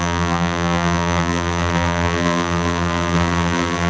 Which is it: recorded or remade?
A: remade